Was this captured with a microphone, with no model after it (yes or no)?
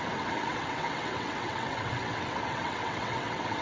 no